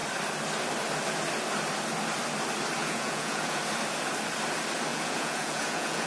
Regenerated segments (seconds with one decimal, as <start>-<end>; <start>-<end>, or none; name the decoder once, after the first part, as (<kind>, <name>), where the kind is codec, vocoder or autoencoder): 2.8-3.6 (vocoder, Vocos); 4.9-6.1